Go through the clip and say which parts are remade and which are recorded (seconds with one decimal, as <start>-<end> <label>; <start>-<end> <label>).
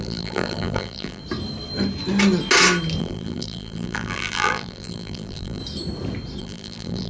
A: 0.0-1.2 remade; 1.2-3.0 recorded; 3.0-5.6 remade; 5.6-6.4 recorded; 6.4-7.1 remade